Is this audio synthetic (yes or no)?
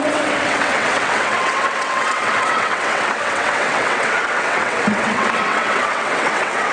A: yes